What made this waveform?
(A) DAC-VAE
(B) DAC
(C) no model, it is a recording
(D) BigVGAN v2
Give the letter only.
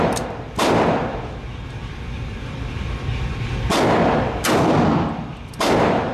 D